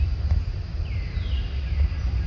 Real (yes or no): yes